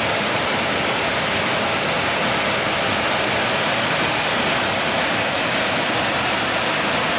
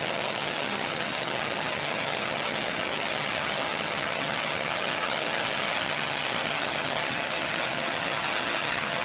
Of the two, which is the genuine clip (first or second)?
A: first